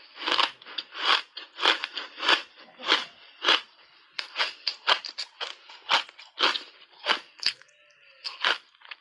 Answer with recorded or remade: recorded